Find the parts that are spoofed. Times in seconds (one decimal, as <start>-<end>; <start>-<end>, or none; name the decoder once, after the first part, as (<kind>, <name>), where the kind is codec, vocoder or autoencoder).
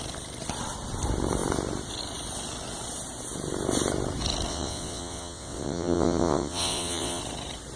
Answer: 4.5-7.2 (vocoder, WaveNeXt)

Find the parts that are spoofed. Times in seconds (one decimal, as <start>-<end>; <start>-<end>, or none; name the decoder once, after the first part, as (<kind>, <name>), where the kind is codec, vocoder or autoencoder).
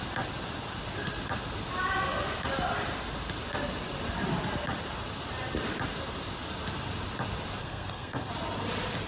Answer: 7.6-8.3 (codec, SNAC)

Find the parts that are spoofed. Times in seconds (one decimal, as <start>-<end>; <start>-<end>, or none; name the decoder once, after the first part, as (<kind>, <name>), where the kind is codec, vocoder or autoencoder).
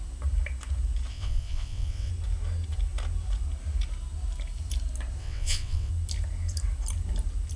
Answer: 1.1-2.1 (vocoder, WaveNeXt); 5.2-5.9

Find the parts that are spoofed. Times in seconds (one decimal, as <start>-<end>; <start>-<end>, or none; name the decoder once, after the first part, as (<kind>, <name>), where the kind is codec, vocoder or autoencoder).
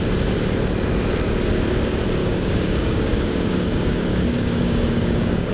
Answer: 2.2-5.5 (codec, DAC)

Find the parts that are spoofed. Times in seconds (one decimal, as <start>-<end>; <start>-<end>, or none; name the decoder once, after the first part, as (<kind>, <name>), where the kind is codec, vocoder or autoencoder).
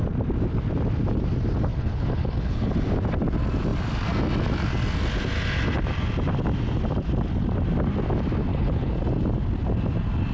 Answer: 1.7-2.7 (codec, HILCodec); 8.5-9.0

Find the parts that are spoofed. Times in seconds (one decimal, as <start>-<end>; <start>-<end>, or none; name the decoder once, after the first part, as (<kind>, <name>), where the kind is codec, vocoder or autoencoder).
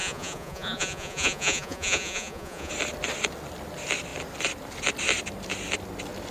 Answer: 0.0-2.7 (vocoder, Vocos)